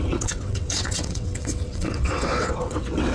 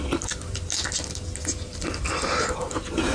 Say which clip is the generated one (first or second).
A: first